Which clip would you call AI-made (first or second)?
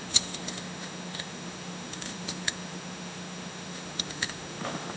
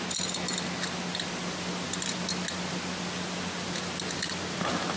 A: first